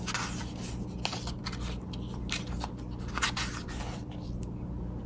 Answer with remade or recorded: recorded